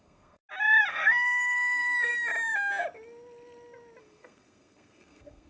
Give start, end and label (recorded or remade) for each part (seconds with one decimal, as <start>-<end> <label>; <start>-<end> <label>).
0.0-0.4 remade; 0.4-0.9 recorded; 0.9-2.1 remade; 2.1-4.0 recorded; 4.0-5.5 remade